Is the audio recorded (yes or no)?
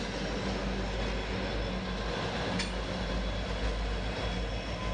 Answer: yes